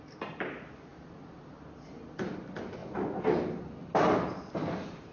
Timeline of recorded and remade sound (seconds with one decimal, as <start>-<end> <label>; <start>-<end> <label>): 0.0-5.1 recorded